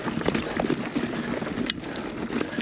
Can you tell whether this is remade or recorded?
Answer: recorded